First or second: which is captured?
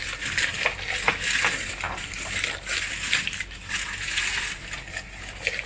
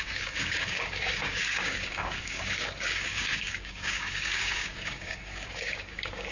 first